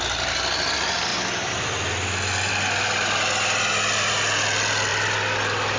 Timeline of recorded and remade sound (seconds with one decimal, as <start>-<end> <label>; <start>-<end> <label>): 0.0-5.8 recorded